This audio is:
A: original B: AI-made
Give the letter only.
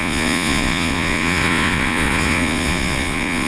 B